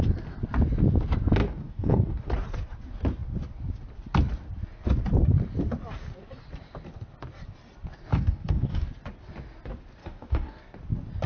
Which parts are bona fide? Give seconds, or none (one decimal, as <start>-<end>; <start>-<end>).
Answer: 0.0-1.4; 2.3-8.1; 8.9-10.0; 10.6-11.3